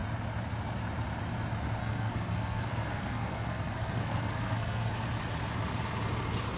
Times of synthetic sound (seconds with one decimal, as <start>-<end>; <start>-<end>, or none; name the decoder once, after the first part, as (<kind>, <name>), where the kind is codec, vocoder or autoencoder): 1.8-4.9 (codec, SNAC)